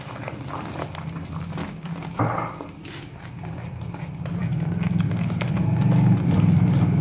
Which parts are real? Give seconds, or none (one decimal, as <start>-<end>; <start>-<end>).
0.0-1.6; 2.2-7.0